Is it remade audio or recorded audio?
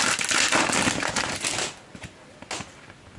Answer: recorded